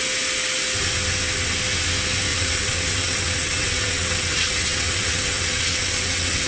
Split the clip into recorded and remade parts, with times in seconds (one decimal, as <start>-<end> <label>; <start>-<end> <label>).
0.0-2.3 recorded; 2.3-6.5 remade